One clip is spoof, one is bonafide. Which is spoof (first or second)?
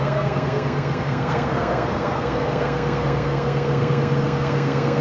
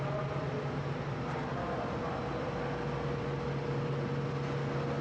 first